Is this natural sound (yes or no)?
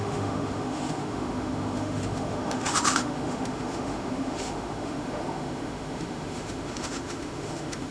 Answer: no